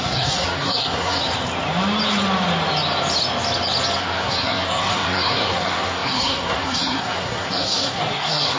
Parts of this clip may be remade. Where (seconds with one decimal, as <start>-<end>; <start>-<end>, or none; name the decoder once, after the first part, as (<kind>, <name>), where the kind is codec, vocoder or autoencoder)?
0.0-1.2 (codec, SNAC); 4.0-8.6